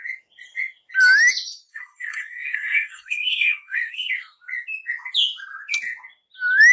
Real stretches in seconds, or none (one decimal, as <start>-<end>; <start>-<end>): 0.0-1.7; 4.1-6.7